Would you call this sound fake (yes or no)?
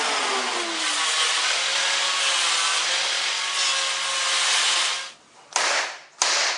no